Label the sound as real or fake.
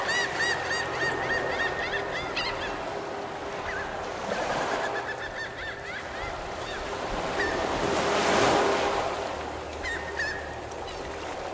real